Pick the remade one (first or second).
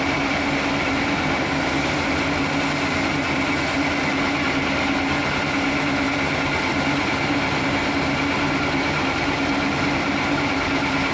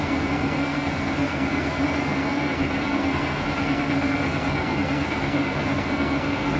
second